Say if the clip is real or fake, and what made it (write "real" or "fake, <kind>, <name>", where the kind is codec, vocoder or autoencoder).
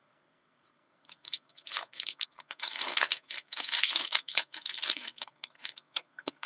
fake, codec, SNAC